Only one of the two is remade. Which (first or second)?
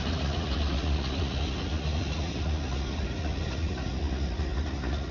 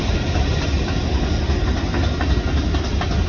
first